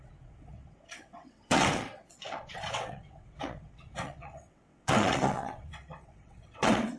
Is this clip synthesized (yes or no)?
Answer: yes